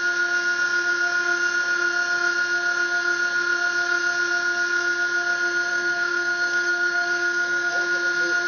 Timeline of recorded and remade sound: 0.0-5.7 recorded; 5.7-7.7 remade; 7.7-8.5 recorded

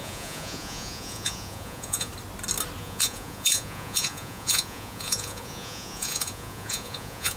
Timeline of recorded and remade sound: 0.0-2.1 remade; 2.1-2.8 recorded; 2.8-7.4 remade

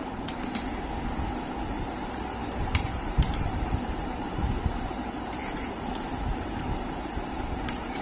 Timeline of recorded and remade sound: 0.0-1.7 recorded; 1.7-8.0 remade

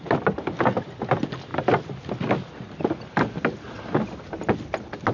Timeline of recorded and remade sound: 0.0-5.1 recorded